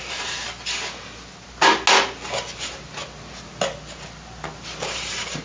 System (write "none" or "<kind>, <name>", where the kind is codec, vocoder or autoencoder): none